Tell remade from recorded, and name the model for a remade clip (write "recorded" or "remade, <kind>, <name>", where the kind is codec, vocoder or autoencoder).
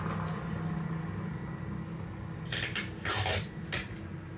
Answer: recorded